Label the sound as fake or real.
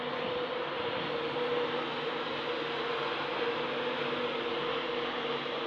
real